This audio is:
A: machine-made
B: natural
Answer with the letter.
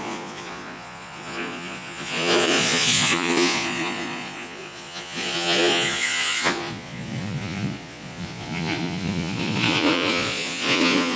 A